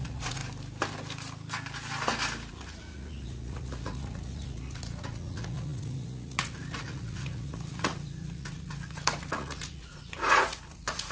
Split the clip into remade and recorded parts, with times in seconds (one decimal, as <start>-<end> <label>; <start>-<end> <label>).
0.0-0.4 remade; 0.4-2.5 recorded; 2.5-11.1 remade